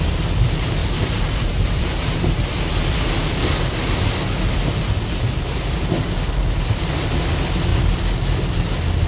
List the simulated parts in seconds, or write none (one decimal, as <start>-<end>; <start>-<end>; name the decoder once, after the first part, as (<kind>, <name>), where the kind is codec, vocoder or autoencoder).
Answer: 0.8-2.5 (vocoder, BigVGAN v2)